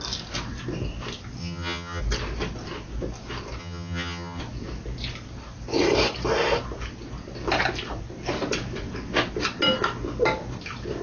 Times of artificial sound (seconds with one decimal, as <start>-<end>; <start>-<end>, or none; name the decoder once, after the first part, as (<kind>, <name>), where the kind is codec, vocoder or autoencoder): 1.4-2.0 (vocoder, HiFi-GAN); 3.6-4.4